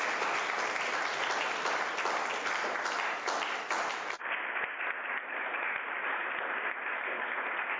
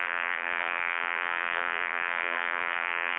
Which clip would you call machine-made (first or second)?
second